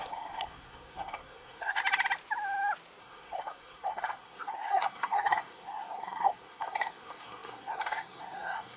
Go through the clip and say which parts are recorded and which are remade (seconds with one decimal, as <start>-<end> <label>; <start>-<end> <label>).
0.0-1.8 remade; 1.8-3.0 recorded; 3.0-8.8 remade